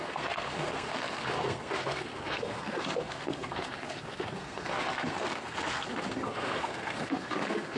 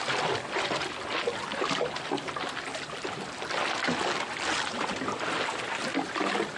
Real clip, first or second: second